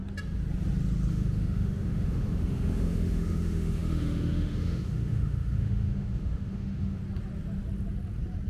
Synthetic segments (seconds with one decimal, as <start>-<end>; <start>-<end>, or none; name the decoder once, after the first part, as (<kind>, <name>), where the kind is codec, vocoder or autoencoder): 1.1-7.0 (autoencoder, DAC-VAE)